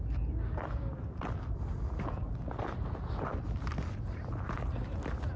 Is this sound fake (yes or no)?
no